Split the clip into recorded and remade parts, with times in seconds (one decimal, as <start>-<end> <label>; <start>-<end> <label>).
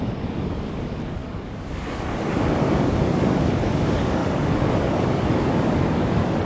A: 0.0-6.5 remade